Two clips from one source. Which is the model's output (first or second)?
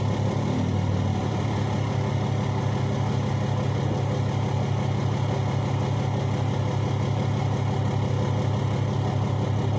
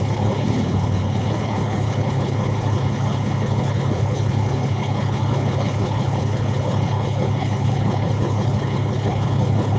second